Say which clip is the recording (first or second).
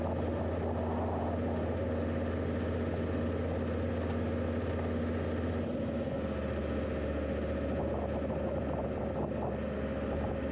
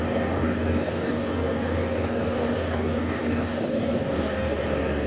first